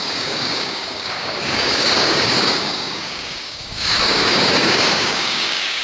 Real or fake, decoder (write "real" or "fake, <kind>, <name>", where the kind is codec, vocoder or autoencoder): fake, codec, DAC